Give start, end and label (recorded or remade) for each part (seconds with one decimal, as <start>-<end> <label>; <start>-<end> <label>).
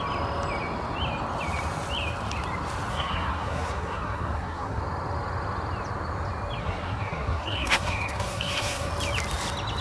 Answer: 0.0-2.9 recorded; 2.9-4.8 remade; 4.8-6.6 recorded; 6.6-8.9 remade; 8.9-9.8 recorded